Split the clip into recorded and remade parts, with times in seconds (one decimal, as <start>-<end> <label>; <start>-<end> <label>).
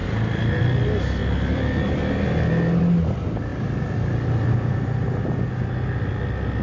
0.0-3.5 recorded; 3.5-5.5 remade; 5.5-6.6 recorded